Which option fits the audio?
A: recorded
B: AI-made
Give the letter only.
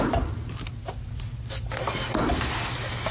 A